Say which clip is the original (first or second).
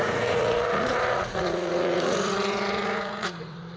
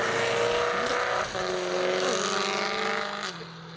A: second